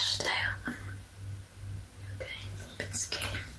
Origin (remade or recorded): recorded